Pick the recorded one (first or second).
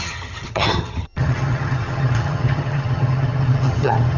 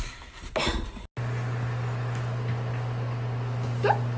second